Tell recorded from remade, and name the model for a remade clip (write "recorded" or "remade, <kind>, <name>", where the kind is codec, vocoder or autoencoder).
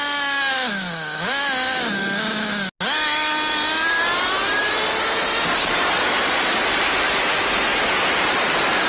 recorded